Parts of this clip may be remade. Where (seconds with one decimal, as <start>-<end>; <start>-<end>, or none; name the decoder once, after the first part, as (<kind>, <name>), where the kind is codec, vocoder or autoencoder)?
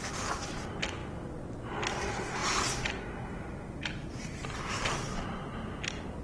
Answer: none